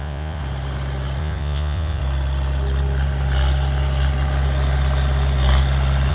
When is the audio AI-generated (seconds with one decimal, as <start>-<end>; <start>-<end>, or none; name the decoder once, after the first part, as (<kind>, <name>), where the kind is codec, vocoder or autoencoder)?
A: 0.0-0.4 (vocoder, Vocos); 1.2-2.0